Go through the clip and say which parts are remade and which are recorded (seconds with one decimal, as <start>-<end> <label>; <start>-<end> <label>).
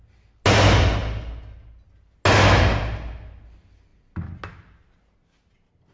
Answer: 0.0-5.9 recorded